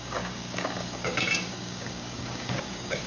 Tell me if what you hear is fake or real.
fake